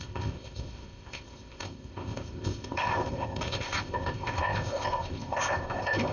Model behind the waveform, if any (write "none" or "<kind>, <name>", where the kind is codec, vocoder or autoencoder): codec, ZipCodec